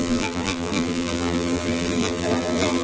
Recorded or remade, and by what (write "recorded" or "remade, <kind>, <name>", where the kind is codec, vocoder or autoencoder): remade, vocoder, BigVGAN v2